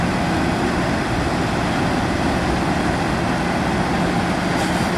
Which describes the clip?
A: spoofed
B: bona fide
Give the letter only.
B